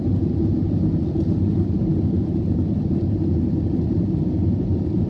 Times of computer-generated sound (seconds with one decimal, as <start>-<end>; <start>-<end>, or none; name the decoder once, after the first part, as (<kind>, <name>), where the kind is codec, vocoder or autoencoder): none